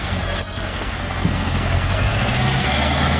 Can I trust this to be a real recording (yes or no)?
no